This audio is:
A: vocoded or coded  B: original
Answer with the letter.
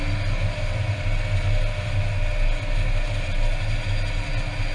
B